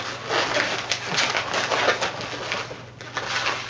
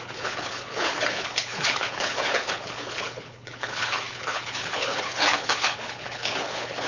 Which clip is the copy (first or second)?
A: second